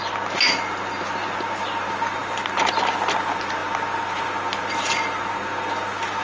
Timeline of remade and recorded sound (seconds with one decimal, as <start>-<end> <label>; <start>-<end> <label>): 0.0-6.2 recorded